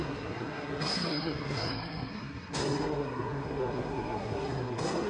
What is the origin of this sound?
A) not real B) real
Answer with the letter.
A